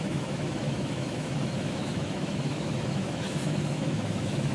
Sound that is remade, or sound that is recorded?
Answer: remade